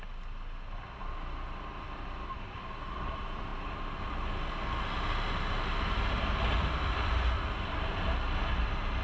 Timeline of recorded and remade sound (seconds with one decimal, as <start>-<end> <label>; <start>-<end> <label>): 0.0-9.0 recorded

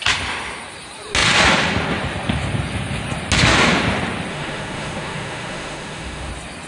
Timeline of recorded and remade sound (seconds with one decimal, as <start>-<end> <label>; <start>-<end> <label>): 0.0-4.3 recorded; 4.3-6.3 remade; 6.3-6.7 recorded

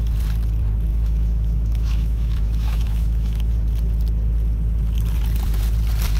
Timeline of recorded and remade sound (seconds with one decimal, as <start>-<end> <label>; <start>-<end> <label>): 0.0-0.9 recorded; 0.9-3.5 remade; 3.5-6.2 recorded

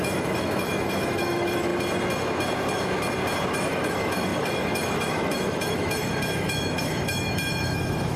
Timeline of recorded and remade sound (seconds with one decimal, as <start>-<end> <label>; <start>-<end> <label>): 0.0-1.7 remade; 1.7-3.5 recorded; 3.5-8.2 remade

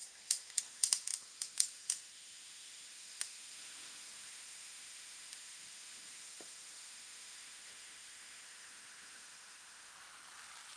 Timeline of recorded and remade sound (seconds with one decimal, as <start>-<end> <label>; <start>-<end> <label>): 0.0-9.9 remade; 9.9-10.8 recorded

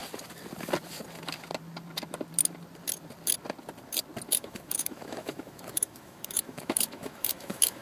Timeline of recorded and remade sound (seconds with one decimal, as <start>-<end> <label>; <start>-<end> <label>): 0.0-4.3 recorded; 4.3-7.8 remade

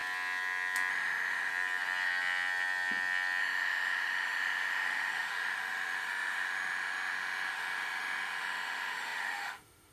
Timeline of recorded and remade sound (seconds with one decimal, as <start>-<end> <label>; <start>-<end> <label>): 0.0-0.9 recorded; 0.9-1.5 remade; 1.5-3.4 recorded; 3.4-9.9 remade

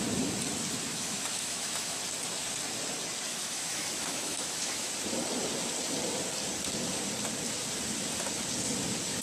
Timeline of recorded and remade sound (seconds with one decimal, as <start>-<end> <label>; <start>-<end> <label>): 0.0-0.9 recorded; 0.9-2.0 remade; 2.0-3.3 recorded; 3.3-4.9 remade; 4.9-9.2 recorded